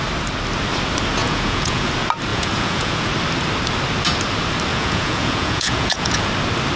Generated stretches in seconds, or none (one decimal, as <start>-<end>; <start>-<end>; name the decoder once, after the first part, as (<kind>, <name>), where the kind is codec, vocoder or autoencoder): 1.2-1.9 (vocoder, Vocos); 2.3-3.1; 4.7-6.3